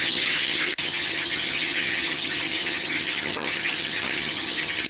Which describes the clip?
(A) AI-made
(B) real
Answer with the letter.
A